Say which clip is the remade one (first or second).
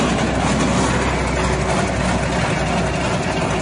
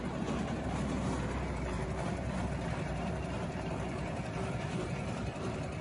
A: second